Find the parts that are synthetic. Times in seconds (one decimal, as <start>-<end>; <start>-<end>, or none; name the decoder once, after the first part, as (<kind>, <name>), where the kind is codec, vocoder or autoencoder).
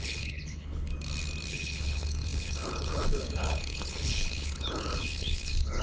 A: 0.0-0.9 (codec, HILCodec); 1.5-5.8